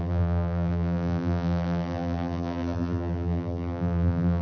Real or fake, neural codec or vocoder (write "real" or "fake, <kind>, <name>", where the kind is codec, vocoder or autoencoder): fake, vocoder, BigVGAN v2